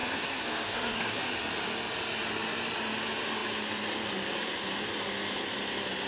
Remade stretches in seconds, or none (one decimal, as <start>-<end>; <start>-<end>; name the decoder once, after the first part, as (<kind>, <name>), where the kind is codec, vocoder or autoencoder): 0.0-1.2 (codec, SNAC)